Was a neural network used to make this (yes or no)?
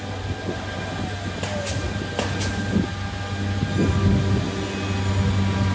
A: no